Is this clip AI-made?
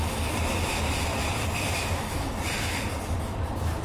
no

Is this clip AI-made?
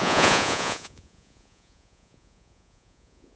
yes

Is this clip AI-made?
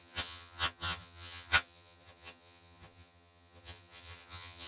yes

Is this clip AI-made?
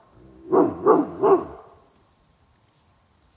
no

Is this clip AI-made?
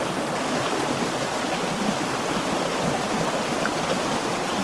no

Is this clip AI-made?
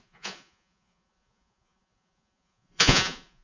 yes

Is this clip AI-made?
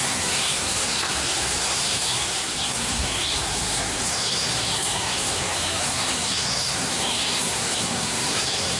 yes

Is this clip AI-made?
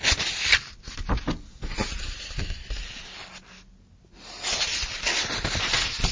no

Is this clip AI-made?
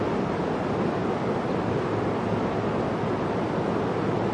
no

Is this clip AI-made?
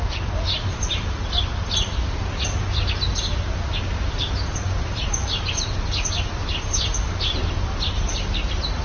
no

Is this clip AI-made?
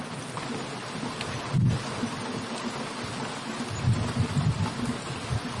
no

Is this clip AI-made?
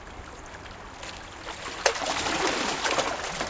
no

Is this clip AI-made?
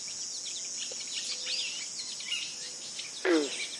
no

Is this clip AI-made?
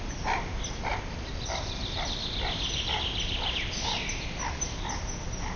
no